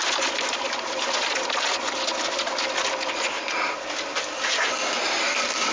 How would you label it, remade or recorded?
recorded